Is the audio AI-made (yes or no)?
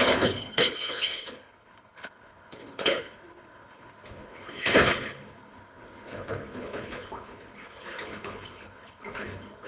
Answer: yes